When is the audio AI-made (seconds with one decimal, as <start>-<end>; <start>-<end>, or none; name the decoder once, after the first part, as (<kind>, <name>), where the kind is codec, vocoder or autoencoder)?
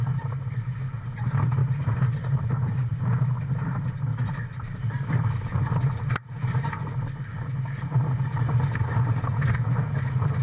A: 1.6-3.3 (vocoder, BigVGAN v2); 4.1-8.8